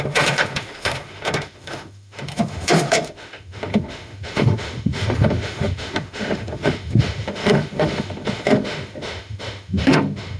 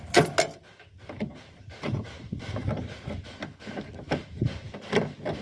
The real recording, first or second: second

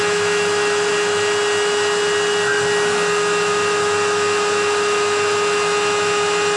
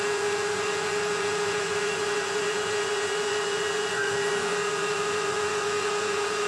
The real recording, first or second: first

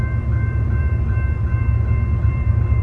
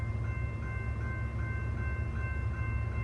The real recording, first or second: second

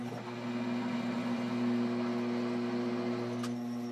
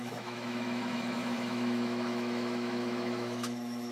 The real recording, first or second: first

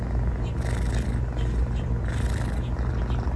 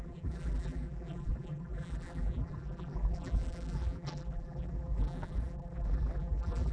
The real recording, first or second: first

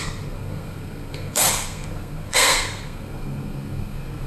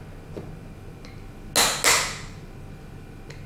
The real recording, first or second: second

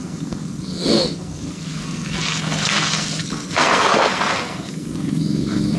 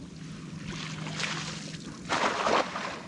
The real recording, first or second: second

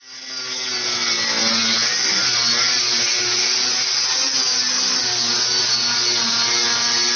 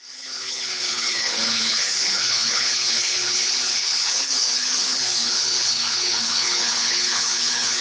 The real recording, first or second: first